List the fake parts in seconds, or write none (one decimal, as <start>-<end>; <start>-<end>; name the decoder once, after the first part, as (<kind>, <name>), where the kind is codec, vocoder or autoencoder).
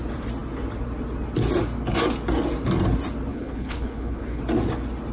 3.3-4.4 (codec, HILCodec)